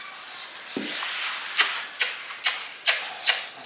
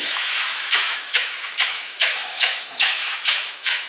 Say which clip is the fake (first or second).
second